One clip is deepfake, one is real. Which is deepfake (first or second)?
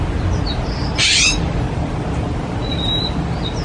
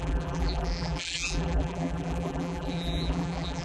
second